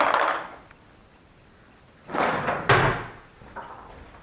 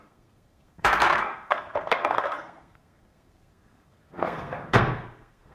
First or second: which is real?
first